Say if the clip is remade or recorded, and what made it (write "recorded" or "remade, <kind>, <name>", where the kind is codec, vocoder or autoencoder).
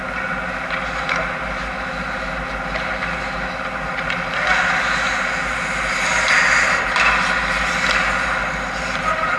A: recorded